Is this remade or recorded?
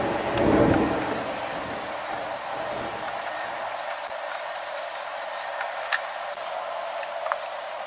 recorded